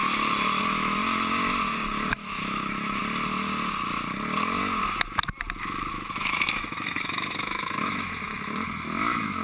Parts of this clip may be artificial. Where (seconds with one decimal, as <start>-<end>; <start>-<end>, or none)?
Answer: 0.6-1.0; 2.1-3.0; 5.9-9.4